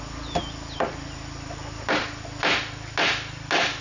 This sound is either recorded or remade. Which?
recorded